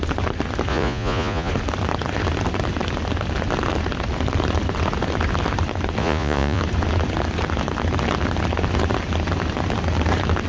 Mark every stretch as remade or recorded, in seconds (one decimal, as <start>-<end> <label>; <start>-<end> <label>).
0.0-0.7 recorded; 0.7-1.5 remade; 1.5-6.0 recorded; 6.0-6.6 remade; 6.6-10.5 recorded